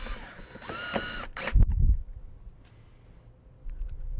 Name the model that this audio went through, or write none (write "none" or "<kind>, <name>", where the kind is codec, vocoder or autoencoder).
none